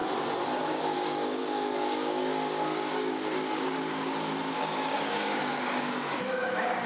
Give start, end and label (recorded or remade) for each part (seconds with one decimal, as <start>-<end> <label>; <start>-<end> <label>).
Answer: 0.0-0.6 recorded; 0.6-6.9 remade